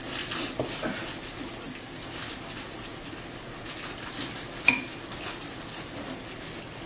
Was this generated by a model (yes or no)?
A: no